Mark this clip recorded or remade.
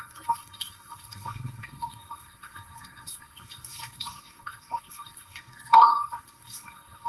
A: remade